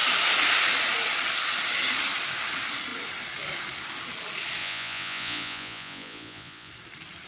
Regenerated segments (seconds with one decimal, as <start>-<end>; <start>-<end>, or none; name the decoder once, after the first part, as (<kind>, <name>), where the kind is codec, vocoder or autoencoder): 4.6-6.7 (vocoder, Vocos)